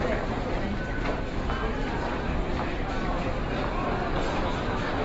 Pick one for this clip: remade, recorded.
recorded